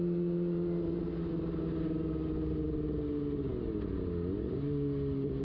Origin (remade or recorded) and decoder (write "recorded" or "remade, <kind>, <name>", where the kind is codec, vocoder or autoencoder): recorded